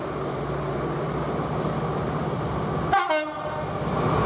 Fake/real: real